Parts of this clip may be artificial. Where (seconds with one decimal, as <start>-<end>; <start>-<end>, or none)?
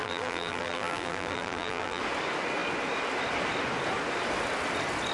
0.0-2.0